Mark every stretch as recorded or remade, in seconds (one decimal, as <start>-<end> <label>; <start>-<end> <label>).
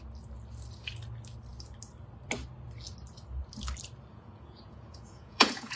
0.0-4.1 recorded; 4.1-5.8 remade